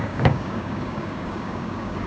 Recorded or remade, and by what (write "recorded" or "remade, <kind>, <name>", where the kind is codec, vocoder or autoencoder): remade, codec, DAC